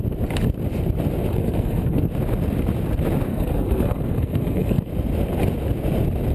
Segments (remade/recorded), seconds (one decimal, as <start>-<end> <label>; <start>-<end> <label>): 0.0-1.3 recorded; 1.3-2.0 remade; 2.0-3.3 recorded; 3.3-4.9 remade; 4.9-6.3 recorded